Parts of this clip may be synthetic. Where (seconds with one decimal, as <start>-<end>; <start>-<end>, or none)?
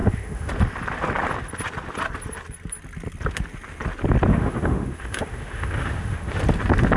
0.0-0.5; 4.3-6.4